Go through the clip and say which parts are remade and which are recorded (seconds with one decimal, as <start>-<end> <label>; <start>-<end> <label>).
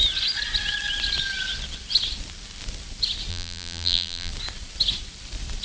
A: 0.0-3.3 recorded; 3.3-4.3 remade; 4.3-5.6 recorded